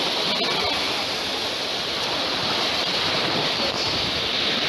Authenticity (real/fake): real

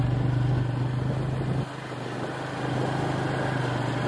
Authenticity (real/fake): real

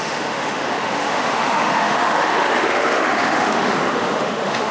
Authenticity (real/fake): fake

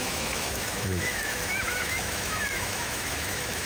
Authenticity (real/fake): fake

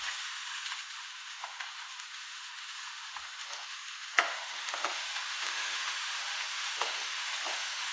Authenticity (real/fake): fake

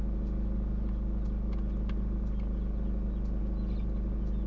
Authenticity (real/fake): real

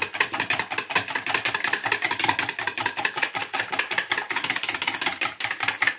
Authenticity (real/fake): real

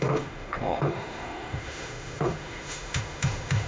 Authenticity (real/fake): fake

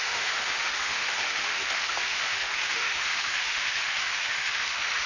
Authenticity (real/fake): fake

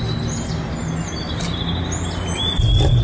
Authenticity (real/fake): real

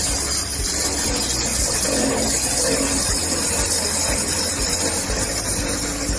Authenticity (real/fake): real